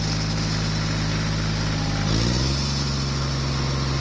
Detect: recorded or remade recorded